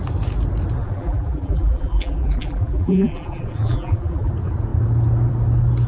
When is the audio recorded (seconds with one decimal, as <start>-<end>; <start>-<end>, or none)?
0.0-0.8; 4.3-5.9